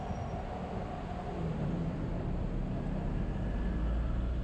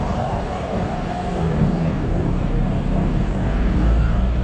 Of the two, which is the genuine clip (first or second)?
first